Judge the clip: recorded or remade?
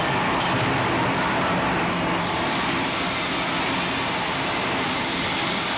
recorded